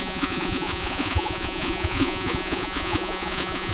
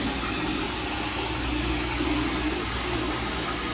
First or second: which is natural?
second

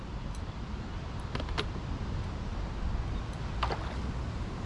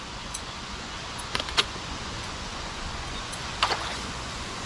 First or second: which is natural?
first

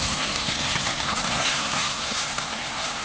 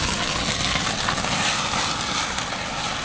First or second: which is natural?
second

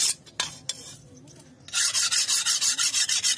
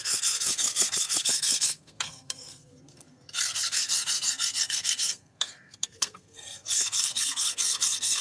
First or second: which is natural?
first